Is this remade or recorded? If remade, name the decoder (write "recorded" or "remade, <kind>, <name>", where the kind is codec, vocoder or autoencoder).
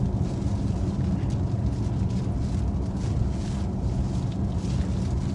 recorded